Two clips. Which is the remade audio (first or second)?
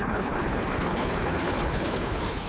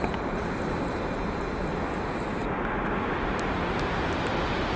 first